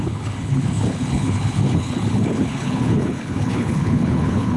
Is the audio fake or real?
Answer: fake